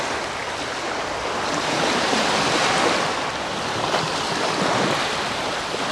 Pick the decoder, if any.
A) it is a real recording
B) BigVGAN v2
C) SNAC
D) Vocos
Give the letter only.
A